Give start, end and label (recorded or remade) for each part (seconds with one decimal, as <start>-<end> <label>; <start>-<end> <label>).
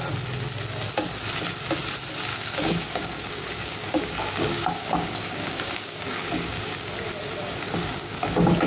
0.0-2.3 recorded; 2.3-6.9 remade; 6.9-7.4 recorded; 7.4-8.7 remade